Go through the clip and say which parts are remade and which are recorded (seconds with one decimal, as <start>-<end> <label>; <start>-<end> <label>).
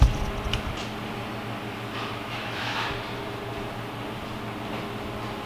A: 0.0-2.2 recorded; 2.2-2.9 remade; 2.9-5.5 recorded